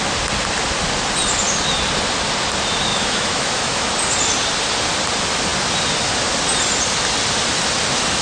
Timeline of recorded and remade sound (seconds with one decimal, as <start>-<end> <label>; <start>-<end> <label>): 0.0-2.9 recorded; 2.9-3.9 remade; 3.9-8.2 recorded